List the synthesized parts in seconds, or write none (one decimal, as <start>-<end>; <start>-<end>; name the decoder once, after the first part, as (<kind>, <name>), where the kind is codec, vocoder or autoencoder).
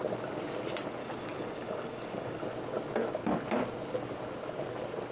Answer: 1.0-2.4 (codec, DAC)